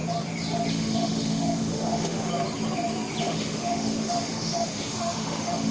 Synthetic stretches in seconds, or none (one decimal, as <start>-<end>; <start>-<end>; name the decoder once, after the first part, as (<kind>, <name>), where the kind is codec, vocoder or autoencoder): 0.7-2.3 (autoencoder, DAC-VAE); 3.2-5.7